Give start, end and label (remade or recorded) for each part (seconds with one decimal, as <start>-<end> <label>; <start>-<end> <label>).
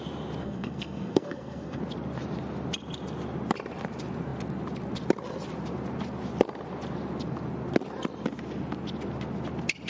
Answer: 0.0-0.4 recorded; 0.4-1.8 remade; 1.8-9.9 recorded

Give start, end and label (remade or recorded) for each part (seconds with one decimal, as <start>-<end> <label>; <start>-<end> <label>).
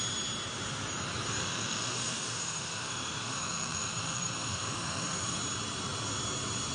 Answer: 0.0-1.4 recorded; 1.4-5.4 remade; 5.4-6.7 recorded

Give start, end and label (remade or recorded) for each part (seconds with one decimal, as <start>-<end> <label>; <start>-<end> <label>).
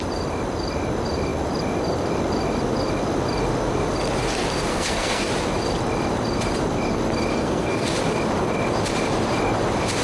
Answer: 0.0-4.7 recorded; 4.7-5.3 remade; 5.3-7.3 recorded; 7.3-7.9 remade; 7.9-10.0 recorded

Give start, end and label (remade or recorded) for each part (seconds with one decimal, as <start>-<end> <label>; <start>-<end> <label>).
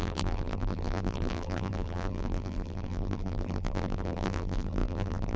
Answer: 0.0-5.4 remade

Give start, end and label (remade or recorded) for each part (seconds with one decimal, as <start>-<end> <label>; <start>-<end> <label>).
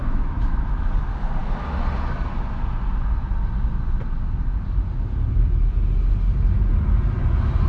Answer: 0.0-0.9 remade; 0.9-7.7 recorded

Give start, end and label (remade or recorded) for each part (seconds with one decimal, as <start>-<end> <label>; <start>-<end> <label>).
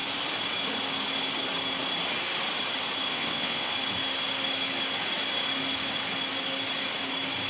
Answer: 0.0-3.1 recorded; 3.1-3.7 remade; 3.7-7.5 recorded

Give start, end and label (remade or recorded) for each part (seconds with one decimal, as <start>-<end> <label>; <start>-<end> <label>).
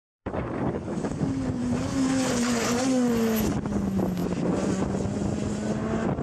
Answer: 0.0-1.2 remade; 1.2-1.6 recorded; 1.6-3.1 remade; 3.1-6.2 recorded